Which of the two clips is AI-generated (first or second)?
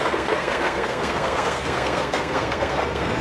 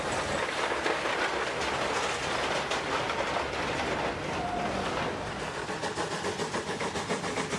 first